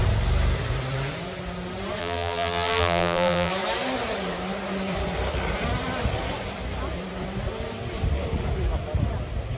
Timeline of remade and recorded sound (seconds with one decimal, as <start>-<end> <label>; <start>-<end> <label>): 0.0-2.0 recorded; 2.0-3.5 remade; 3.5-9.6 recorded